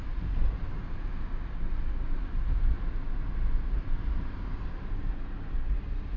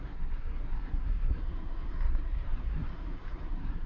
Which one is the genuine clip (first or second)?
first